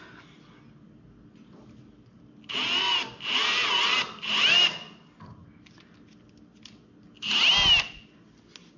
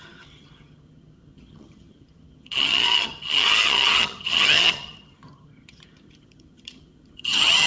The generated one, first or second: second